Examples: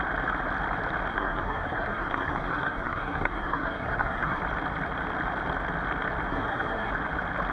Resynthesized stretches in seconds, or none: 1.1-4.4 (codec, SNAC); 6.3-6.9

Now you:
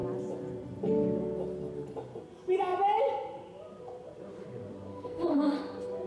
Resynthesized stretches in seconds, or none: 4.9-5.6 (codec, SNAC)